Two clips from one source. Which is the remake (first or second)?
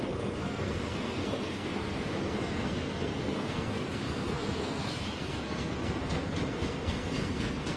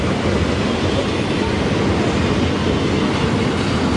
first